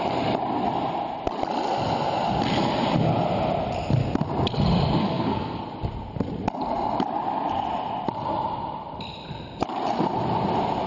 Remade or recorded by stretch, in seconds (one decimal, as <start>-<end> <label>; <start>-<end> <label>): 0.0-5.0 recorded; 5.0-5.6 remade; 5.6-10.9 recorded